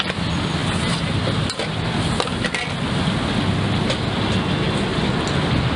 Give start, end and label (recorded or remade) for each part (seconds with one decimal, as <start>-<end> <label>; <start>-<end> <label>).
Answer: 0.0-5.8 recorded